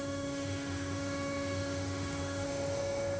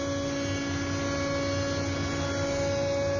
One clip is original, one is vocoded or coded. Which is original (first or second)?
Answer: second